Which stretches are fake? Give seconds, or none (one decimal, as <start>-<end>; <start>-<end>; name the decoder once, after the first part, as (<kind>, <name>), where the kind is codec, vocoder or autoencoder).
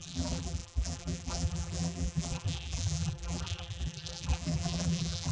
0.0-5.3 (vocoder, BigVGAN v2)